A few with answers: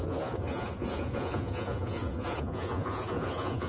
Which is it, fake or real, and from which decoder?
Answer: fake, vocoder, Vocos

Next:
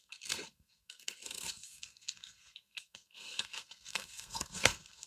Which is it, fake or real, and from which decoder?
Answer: fake, codec, SNAC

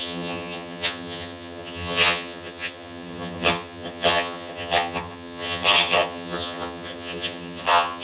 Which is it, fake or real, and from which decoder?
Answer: fake, vocoder, HiFi-GAN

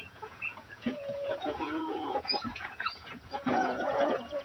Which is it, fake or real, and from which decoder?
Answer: fake, vocoder, Vocos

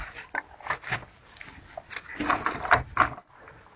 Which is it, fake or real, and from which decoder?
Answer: real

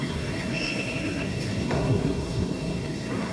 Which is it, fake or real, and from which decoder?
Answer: fake, codec, SNAC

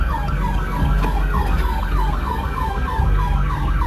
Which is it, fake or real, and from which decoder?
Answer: fake, codec, SNAC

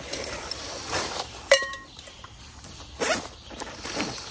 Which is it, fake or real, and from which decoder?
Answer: fake, vocoder, BigVGAN v2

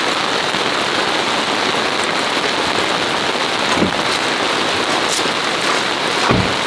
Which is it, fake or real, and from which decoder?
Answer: real